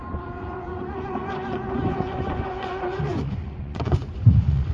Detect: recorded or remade remade